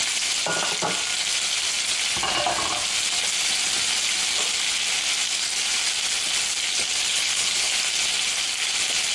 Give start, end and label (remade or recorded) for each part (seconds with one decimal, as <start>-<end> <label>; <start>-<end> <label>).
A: 0.0-7.1 recorded; 7.1-7.8 remade; 7.8-9.1 recorded